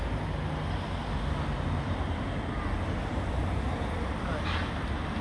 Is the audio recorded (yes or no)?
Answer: yes